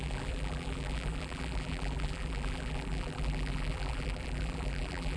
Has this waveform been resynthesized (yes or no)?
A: yes